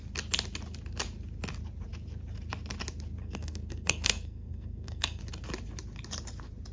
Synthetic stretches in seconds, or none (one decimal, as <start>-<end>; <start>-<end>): 3.2-5.2